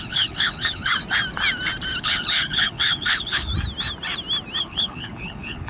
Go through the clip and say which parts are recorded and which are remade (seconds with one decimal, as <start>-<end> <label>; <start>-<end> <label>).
0.0-0.9 remade; 0.9-2.0 recorded; 2.0-3.5 remade; 3.5-4.6 recorded; 4.6-5.7 remade